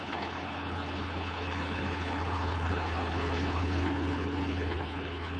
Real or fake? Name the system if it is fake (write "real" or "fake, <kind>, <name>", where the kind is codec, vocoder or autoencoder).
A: fake, codec, HILCodec